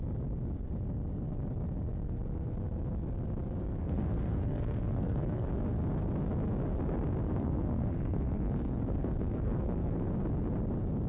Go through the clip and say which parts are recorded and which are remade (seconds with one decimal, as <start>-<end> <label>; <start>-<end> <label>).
0.0-3.8 recorded; 3.8-5.5 remade; 5.5-7.3 recorded; 7.3-10.1 remade; 10.1-11.1 recorded